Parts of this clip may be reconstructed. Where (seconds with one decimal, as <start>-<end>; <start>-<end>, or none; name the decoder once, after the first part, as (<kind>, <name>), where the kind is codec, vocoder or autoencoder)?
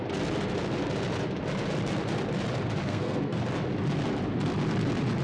2.8-3.4 (codec, SNAC)